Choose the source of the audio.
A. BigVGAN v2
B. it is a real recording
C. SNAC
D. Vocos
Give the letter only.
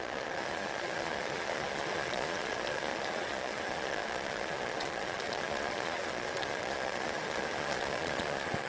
D